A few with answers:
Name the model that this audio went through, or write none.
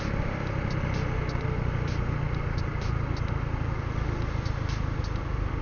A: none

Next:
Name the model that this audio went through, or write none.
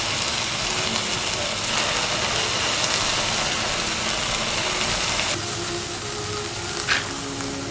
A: none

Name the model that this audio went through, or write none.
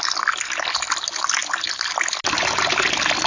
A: none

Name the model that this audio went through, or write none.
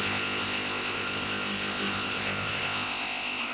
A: codec, ZipCodec